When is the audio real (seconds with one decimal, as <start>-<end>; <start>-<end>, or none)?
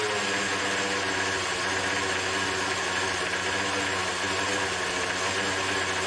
0.0-6.1